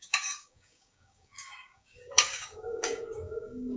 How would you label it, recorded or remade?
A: remade